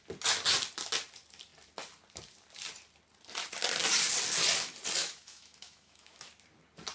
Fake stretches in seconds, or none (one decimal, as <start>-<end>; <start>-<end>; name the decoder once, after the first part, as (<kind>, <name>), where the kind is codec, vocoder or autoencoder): 5.0-6.3 (autoencoder, DAC-VAE)